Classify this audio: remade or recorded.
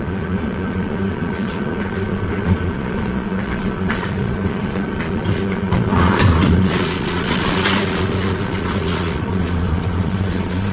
remade